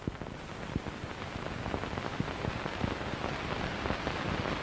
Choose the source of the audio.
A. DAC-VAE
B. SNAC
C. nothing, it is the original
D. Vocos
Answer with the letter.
C